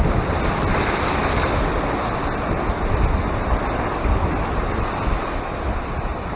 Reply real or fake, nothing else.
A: real